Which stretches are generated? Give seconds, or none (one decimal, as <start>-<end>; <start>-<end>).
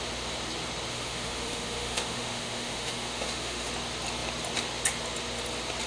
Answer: 0.9-3.7